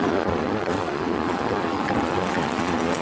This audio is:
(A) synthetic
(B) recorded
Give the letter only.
A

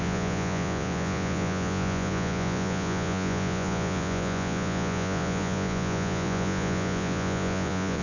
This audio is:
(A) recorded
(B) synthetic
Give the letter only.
B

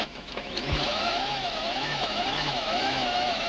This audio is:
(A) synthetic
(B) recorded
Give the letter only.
A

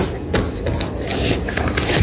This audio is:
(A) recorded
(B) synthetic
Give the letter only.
A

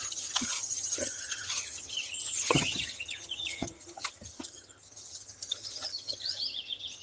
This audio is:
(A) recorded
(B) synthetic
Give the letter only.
B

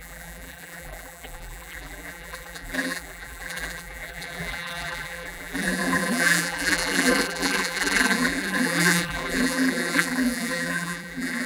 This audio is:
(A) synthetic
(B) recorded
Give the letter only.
A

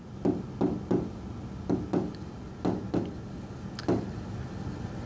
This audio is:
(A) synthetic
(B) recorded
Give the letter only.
B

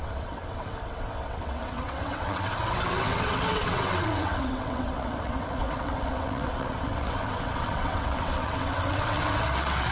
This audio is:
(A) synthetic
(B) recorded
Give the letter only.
A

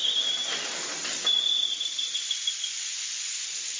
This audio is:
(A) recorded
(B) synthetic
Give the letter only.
A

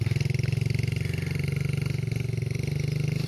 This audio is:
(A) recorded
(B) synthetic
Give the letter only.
A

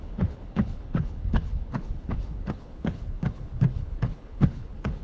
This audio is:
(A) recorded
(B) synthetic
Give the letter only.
B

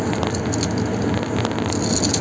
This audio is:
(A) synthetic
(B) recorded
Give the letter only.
B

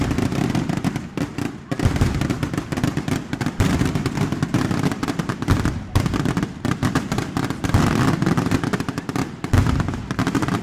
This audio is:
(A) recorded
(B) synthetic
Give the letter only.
B